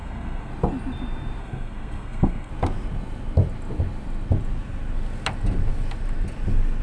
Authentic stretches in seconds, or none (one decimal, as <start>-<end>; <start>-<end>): 0.5-1.4; 2.5-6.8